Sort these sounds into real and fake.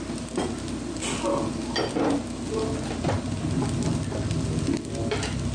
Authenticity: real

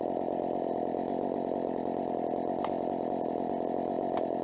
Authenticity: real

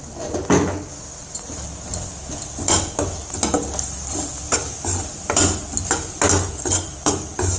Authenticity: real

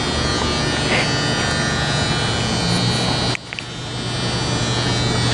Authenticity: real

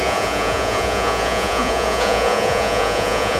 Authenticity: fake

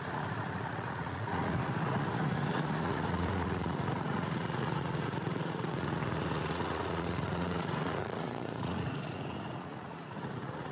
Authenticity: fake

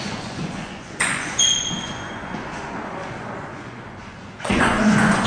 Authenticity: fake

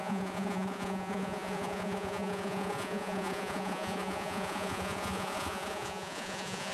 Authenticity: fake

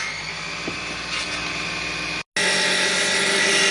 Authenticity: real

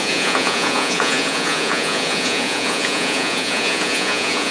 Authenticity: fake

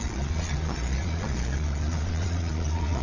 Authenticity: fake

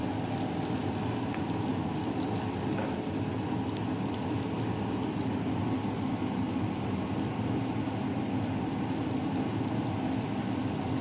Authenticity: real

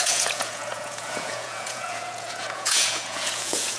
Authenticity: fake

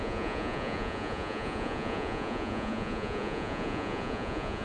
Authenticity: fake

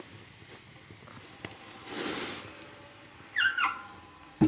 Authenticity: real